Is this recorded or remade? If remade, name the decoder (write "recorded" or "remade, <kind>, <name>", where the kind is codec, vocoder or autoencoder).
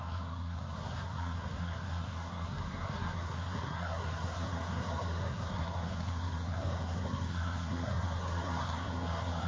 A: remade, codec, SNAC